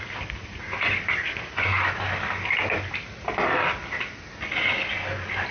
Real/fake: real